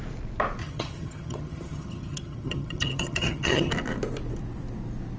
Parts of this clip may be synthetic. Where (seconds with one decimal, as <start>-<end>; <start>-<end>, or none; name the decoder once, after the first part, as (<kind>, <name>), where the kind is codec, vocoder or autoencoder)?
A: 0.6-3.7 (vocoder, HiFi-GAN)